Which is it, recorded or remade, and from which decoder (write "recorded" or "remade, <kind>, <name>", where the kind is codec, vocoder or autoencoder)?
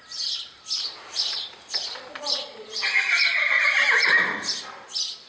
recorded